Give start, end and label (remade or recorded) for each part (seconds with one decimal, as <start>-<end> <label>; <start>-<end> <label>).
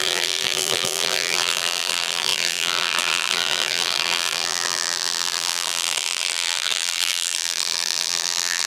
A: 0.0-8.7 remade